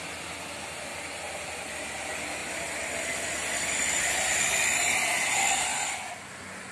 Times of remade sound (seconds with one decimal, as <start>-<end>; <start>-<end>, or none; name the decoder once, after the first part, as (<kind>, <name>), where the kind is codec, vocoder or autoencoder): none